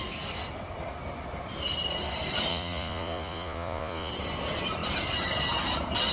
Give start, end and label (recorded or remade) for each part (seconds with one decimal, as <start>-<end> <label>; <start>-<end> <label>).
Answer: 0.0-2.5 recorded; 2.5-4.1 remade; 4.1-6.1 recorded